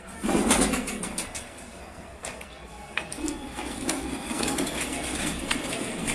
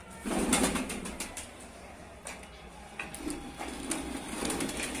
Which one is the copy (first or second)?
first